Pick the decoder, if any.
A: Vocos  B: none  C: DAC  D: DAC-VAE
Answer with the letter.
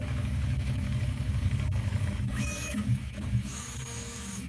C